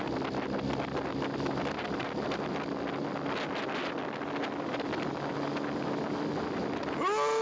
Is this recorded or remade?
recorded